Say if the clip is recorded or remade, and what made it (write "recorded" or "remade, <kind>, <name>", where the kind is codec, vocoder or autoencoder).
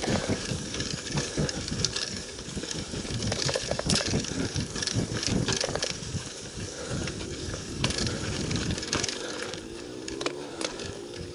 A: remade, codec, DAC